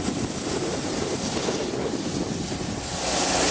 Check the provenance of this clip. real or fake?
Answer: real